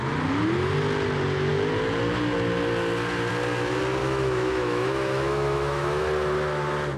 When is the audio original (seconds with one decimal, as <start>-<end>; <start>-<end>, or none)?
0.0-4.0; 6.0-7.0